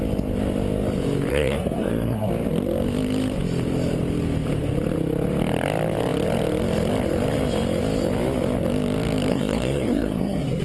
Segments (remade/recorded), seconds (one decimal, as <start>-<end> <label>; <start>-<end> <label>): 0.0-1.3 recorded; 1.3-2.3 remade; 2.3-9.3 recorded; 9.3-10.6 remade